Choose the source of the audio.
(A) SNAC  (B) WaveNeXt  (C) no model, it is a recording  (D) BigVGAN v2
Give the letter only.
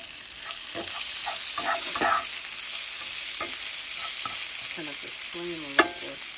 C